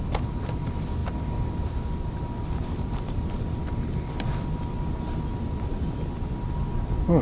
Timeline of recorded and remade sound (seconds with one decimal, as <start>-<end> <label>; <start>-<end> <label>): 0.0-7.2 recorded